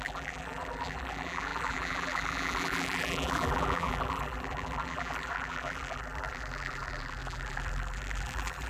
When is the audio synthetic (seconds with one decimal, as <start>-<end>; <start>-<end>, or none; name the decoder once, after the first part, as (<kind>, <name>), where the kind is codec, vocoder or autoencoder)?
0.0-8.7 (vocoder, BigVGAN v2)